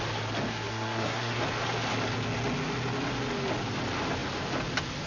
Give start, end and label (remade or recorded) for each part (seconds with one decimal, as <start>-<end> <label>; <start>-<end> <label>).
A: 0.0-0.5 recorded; 0.5-1.4 remade; 1.4-5.1 recorded